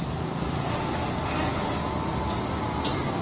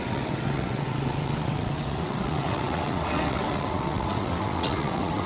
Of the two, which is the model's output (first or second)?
second